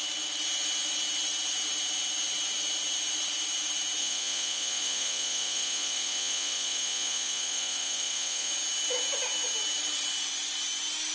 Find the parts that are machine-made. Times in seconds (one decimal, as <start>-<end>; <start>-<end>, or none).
4.0-8.5